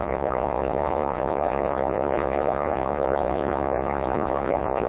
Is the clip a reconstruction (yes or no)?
yes